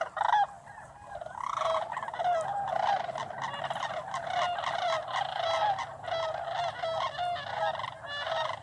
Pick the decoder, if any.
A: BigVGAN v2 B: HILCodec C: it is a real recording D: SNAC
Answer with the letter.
C